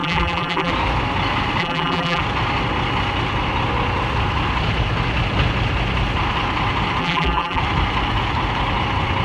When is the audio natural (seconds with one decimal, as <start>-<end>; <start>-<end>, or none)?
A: 0.7-1.6; 2.2-7.0; 7.6-9.2